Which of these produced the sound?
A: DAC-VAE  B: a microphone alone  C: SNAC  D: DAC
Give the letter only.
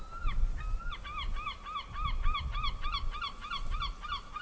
B